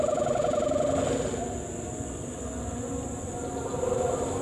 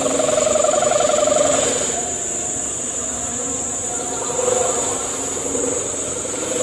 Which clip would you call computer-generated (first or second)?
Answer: second